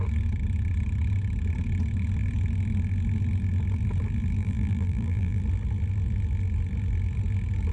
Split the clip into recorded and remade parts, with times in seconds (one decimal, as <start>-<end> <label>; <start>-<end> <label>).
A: 0.0-4.4 recorded; 4.4-5.4 remade; 5.4-7.7 recorded